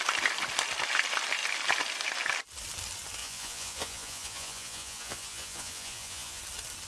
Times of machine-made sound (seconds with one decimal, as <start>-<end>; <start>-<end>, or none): 3.2-6.4